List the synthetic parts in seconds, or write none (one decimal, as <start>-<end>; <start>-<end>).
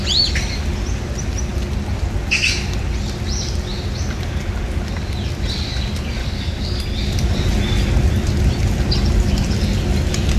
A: 6.2-6.8